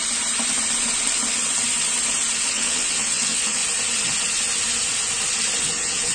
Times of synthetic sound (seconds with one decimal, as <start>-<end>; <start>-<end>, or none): 2.5-3.6; 5.6-6.1